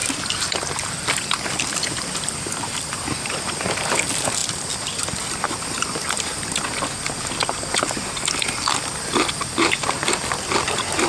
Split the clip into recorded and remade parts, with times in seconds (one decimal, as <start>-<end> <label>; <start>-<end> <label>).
0.0-11.1 recorded

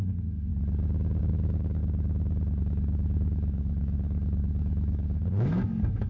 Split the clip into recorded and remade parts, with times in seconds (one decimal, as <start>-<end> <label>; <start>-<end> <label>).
0.0-0.5 remade; 0.5-1.2 recorded; 1.2-1.8 remade; 1.8-2.6 recorded; 2.6-6.1 remade

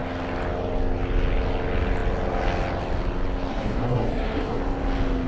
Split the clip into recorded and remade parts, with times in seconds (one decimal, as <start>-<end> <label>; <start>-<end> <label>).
0.0-3.5 recorded; 3.5-4.6 remade; 4.6-5.3 recorded